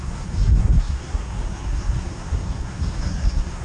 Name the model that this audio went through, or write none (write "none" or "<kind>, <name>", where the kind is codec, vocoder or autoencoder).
codec, SNAC